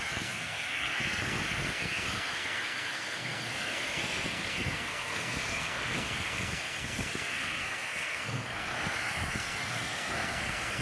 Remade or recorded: remade